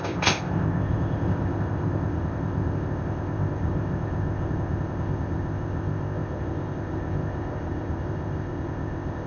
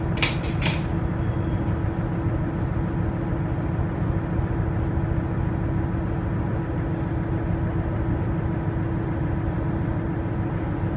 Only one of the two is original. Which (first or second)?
second